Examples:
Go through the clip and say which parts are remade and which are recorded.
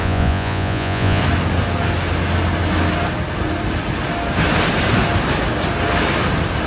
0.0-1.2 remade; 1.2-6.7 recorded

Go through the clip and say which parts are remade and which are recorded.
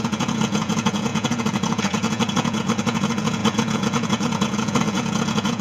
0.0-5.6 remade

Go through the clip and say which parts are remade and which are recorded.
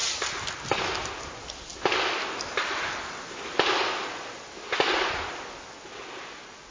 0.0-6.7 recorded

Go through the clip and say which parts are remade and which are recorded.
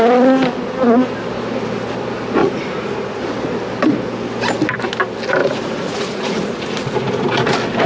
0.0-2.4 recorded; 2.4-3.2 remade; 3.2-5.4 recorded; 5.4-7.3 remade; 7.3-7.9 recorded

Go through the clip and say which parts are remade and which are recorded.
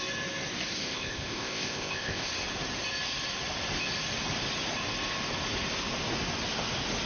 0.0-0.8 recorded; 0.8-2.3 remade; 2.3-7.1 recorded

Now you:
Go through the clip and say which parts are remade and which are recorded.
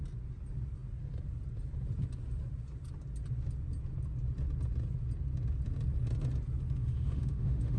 0.0-6.8 recorded; 6.8-7.8 remade